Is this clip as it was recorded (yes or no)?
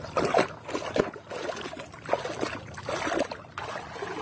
yes